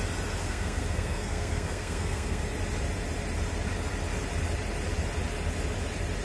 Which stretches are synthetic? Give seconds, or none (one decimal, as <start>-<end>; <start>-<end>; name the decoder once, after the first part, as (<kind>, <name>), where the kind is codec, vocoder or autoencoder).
0.4-2.4 (codec, SNAC)